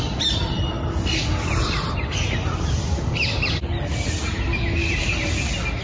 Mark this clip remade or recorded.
recorded